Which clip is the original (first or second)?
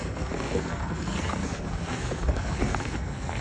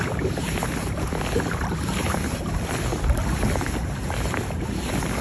second